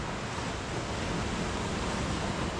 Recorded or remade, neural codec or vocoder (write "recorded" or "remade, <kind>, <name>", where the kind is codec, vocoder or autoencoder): recorded